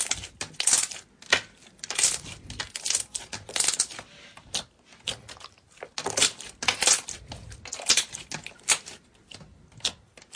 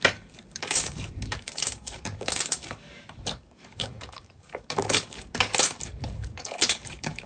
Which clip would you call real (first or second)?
first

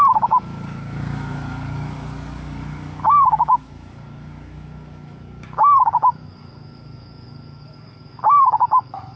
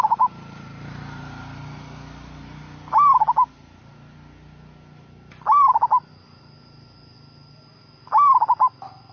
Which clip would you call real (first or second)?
second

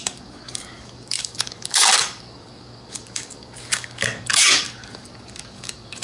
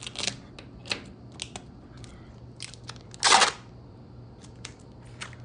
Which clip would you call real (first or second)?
second